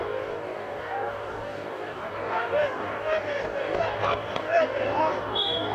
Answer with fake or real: fake